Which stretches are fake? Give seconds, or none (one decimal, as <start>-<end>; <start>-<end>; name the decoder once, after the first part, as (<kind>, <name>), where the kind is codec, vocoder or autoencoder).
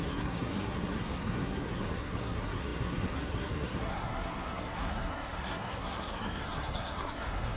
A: 0.0-7.6 (codec, SNAC)